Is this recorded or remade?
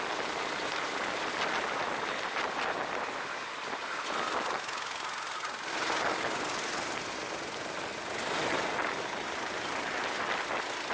recorded